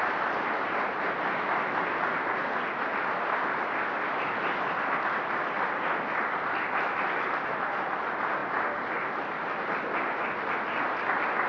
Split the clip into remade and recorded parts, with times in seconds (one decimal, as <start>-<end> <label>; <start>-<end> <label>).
0.0-11.5 recorded